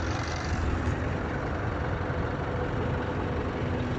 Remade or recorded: recorded